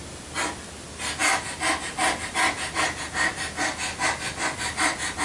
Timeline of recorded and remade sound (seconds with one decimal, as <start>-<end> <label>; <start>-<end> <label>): 0.0-5.2 recorded